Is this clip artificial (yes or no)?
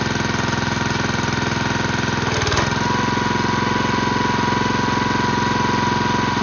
no